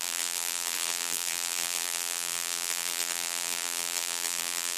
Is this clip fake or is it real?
fake